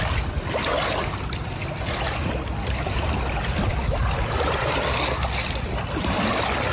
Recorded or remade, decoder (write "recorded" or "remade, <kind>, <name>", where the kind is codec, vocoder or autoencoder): remade, vocoder, BigVGAN v2